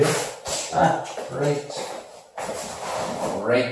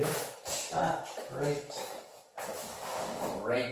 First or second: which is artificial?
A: second